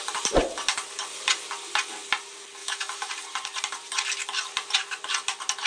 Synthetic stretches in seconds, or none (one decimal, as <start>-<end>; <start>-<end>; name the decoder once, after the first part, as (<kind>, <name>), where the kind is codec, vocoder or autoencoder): 2.6-3.1 (autoencoder, DAC-VAE)